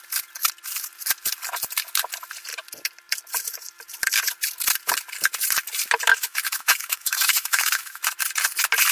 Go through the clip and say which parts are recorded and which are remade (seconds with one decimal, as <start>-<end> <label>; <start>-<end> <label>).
0.0-6.1 recorded; 6.1-8.0 remade; 8.0-8.9 recorded